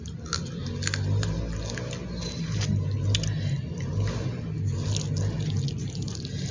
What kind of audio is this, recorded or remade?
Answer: recorded